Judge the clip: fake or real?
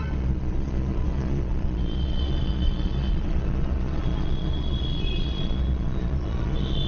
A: fake